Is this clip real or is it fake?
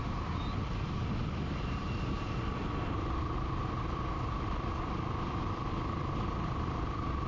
fake